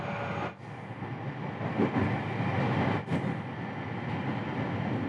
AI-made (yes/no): no